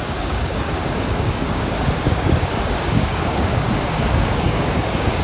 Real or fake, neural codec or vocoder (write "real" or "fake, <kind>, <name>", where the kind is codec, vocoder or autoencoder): fake, codec, DAC